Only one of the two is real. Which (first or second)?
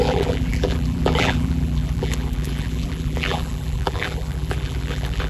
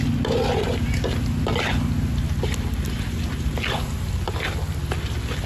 second